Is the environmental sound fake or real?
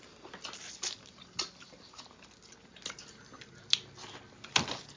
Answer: real